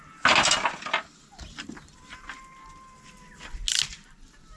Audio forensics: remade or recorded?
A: recorded